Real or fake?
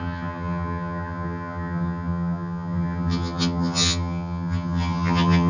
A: fake